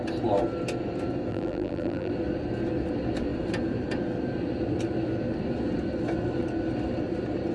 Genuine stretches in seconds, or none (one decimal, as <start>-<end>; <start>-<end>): 0.0-1.3; 2.1-7.5